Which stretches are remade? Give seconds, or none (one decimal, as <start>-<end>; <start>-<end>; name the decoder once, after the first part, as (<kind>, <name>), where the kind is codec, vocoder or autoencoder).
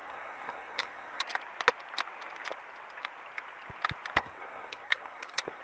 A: 0.0-1.2 (codec, SNAC); 4.2-5.6